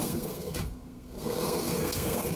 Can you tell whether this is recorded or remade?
remade